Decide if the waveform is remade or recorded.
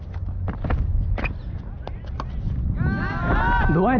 recorded